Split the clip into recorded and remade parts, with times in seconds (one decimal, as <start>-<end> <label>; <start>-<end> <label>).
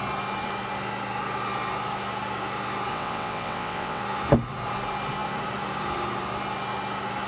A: 0.0-2.9 recorded; 2.9-4.0 remade; 4.0-7.3 recorded